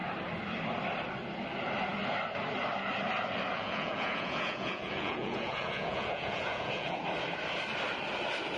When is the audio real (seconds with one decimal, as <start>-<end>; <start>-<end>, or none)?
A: 0.0-3.5; 7.0-8.6